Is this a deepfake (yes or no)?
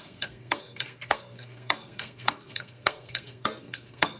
yes